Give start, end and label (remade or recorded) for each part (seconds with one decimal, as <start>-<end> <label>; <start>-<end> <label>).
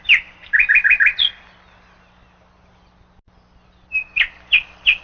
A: 0.0-0.4 recorded; 0.4-1.1 remade; 1.1-5.0 recorded